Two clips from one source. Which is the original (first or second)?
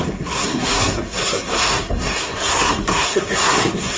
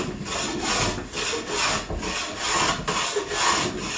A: second